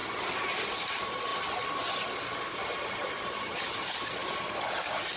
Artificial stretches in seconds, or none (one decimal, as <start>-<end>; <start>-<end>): 0.6-1.3; 1.9-4.2